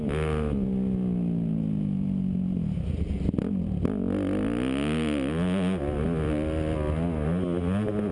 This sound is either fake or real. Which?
real